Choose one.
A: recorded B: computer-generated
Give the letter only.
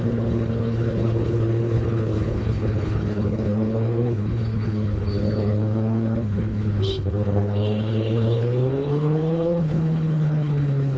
B